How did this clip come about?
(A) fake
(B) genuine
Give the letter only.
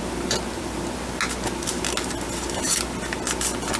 B